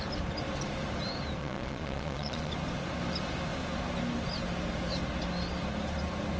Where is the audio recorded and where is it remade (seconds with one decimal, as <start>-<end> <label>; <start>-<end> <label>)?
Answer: 0.0-1.4 recorded; 1.4-2.5 remade; 2.5-6.4 recorded